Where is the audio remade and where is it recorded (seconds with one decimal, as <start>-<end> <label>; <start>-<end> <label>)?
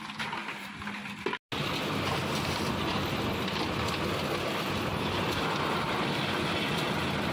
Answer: 0.0-7.3 recorded